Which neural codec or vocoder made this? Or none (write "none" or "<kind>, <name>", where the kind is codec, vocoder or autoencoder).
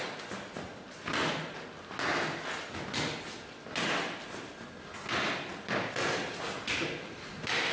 none